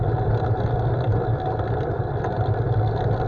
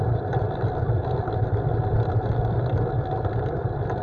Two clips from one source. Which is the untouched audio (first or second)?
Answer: first